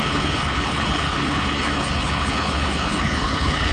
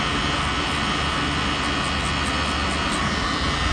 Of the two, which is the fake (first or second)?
first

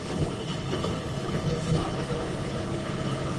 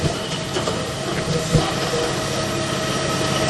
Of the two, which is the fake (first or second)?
first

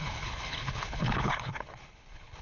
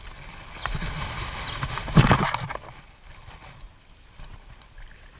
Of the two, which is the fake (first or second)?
first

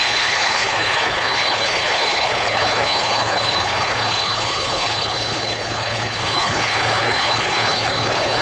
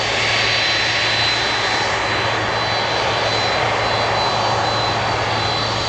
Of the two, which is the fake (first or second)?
first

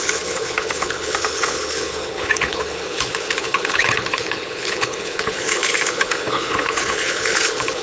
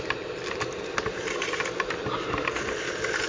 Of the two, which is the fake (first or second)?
first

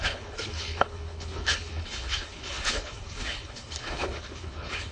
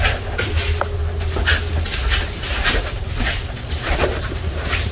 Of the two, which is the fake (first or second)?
first